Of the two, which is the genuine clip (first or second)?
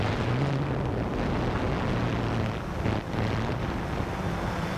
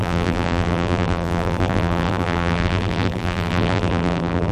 first